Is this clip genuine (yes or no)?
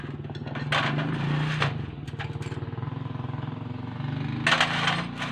yes